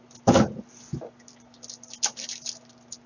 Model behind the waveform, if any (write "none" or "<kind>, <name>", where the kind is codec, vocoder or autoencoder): none